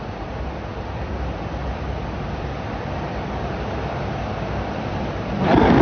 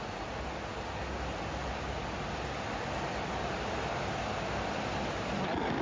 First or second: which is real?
second